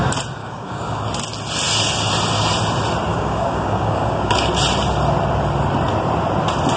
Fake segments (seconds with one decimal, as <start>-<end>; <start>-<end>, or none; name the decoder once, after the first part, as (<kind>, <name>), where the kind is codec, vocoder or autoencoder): 0.4-1.0 (codec, DAC); 3.1-4.3